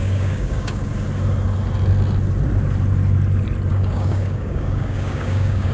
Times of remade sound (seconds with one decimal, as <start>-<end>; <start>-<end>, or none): 0.0-0.9; 3.7-5.7